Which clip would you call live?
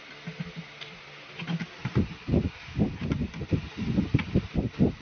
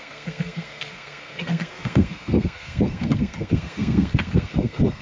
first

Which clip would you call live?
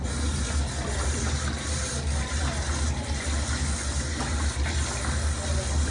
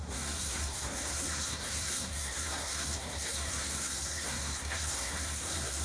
first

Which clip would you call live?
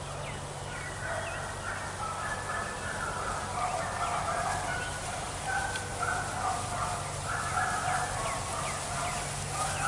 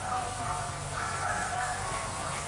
first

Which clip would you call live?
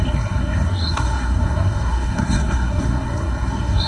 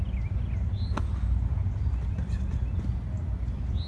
second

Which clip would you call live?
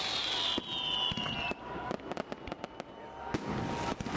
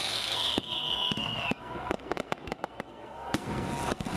first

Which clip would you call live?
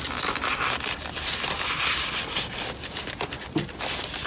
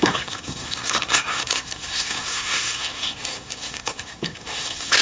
first